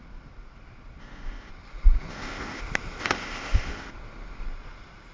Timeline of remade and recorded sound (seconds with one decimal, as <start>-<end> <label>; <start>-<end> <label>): 0.0-1.0 recorded; 1.0-1.5 remade; 1.5-2.1 recorded; 2.1-2.6 remade; 2.6-3.0 recorded; 3.0-3.9 remade; 3.9-5.1 recorded